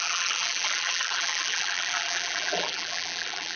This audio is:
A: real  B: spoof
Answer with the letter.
B